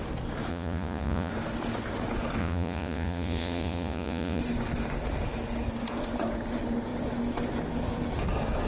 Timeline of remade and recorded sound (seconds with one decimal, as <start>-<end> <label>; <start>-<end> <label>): 0.0-0.5 recorded; 0.5-1.3 remade; 1.3-2.4 recorded; 2.4-4.4 remade; 4.4-8.7 recorded